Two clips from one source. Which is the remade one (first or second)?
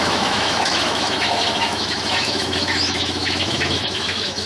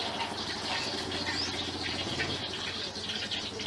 first